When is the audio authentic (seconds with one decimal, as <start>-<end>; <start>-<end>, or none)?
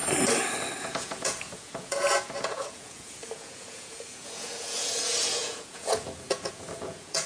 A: 0.0-0.8